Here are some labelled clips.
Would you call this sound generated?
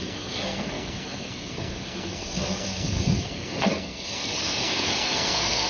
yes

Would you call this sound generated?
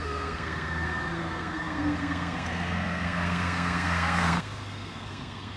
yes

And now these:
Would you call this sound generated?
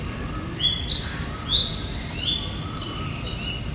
no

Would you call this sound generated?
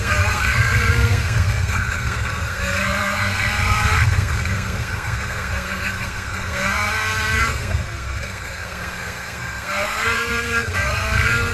yes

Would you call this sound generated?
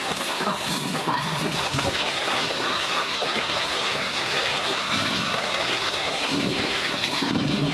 yes